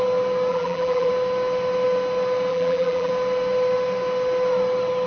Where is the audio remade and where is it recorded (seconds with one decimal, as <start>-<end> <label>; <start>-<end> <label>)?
0.0-0.5 recorded; 0.5-1.1 remade; 1.1-2.5 recorded; 2.5-3.1 remade; 3.1-5.1 recorded